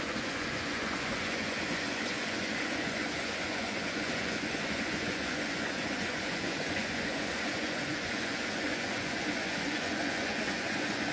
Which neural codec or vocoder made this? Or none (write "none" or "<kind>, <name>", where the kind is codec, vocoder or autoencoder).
vocoder, Vocos